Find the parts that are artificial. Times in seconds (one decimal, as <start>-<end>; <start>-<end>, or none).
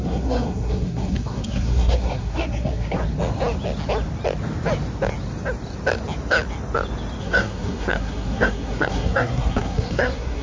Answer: 0.0-3.0; 7.2-10.4